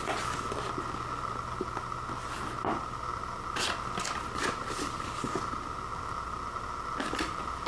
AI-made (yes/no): no